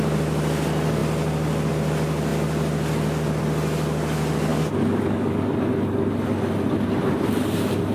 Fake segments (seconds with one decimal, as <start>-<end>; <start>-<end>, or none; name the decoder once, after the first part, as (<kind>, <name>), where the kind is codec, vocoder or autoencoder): 4.5-5.5 (codec, DAC)